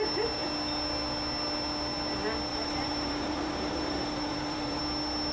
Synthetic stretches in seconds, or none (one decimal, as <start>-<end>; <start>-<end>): 2.5-4.8

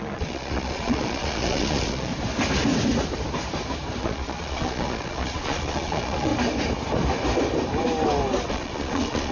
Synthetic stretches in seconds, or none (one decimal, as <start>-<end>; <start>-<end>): 0.0-2.1; 4.0-6.3; 8.5-9.3

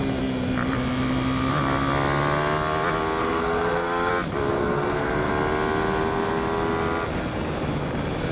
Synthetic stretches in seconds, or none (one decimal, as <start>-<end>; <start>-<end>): 3.2-4.1; 4.5-5.3